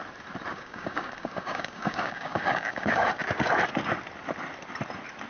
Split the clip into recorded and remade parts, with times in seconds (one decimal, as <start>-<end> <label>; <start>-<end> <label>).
0.0-0.5 recorded; 0.5-3.1 remade; 3.1-5.3 recorded